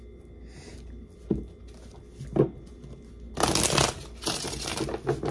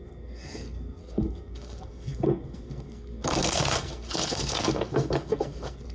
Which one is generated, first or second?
second